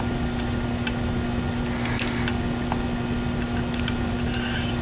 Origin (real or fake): real